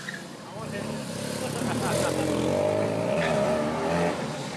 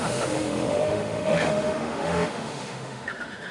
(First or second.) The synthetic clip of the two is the second